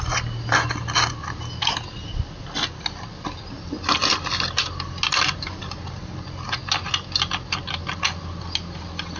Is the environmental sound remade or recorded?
recorded